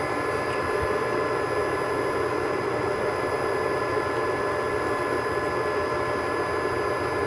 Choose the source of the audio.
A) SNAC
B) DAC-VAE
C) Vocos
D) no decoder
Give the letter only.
D